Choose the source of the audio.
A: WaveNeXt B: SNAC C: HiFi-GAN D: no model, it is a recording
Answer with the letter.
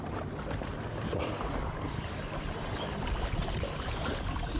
D